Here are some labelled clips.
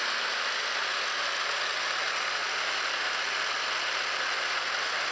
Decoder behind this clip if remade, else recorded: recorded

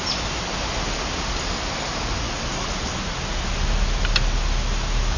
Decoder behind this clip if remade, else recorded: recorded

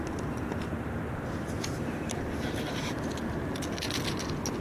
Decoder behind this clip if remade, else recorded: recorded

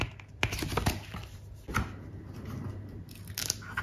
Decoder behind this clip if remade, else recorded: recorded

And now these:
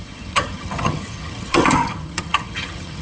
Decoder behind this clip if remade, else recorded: remade, vocoder, HiFi-GAN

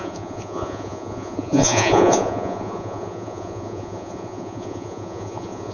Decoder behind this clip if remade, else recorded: remade, vocoder, Vocos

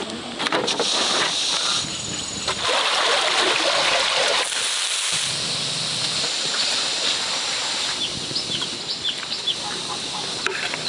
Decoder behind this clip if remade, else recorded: remade, vocoder, BigVGAN v2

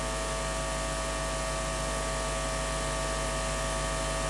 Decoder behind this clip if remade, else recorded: remade, vocoder, BigVGAN v2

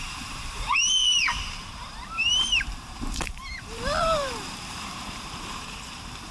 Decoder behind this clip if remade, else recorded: remade, vocoder, BigVGAN v2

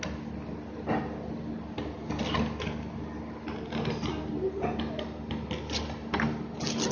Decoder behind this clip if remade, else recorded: recorded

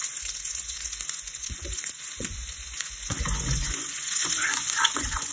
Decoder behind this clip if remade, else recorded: remade, vocoder, Vocos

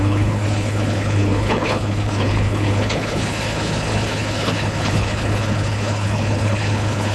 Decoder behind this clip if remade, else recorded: remade, codec, HILCodec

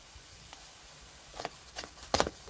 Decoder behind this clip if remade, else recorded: remade, vocoder, Vocos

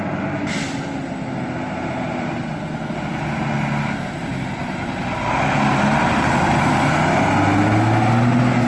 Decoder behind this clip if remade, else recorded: recorded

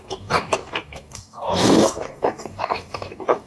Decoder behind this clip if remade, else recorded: remade, codec, DAC